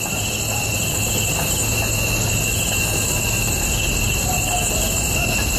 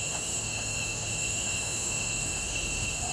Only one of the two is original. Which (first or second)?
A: first